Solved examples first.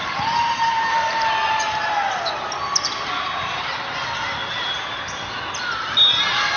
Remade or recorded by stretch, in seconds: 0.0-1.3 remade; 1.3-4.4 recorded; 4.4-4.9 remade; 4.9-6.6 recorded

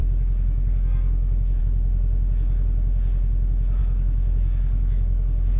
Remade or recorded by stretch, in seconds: 0.0-1.6 remade; 1.6-3.8 recorded; 3.8-5.6 remade

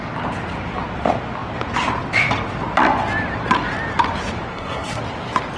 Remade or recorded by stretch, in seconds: 0.0-4.5 recorded; 4.5-5.0 remade; 5.0-5.6 recorded

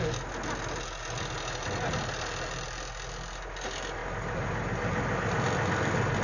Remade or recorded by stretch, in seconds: 0.0-6.2 recorded

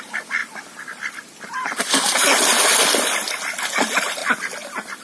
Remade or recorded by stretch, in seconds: 0.0-0.4 recorded; 0.4-3.4 remade; 3.4-4.2 recorded; 4.2-5.0 remade

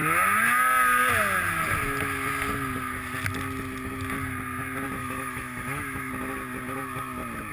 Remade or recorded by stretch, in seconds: 0.0-5.0 recorded; 5.0-6.1 remade; 6.1-7.5 recorded

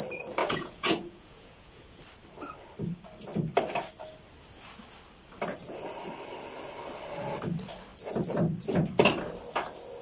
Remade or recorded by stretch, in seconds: 0.0-0.4 recorded; 0.4-2.0 remade; 2.0-10.0 recorded

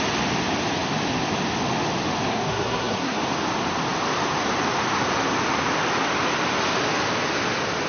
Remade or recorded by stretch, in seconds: 0.0-2.3 recorded; 2.3-3.2 remade; 3.2-7.9 recorded